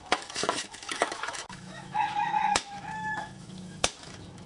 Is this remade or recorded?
remade